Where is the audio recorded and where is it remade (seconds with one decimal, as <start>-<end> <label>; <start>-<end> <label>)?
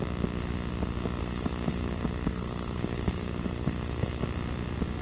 0.0-1.2 recorded; 1.2-4.2 remade; 4.2-5.0 recorded